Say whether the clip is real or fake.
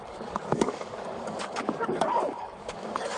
fake